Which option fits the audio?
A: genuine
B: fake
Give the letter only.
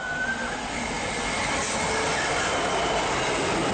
A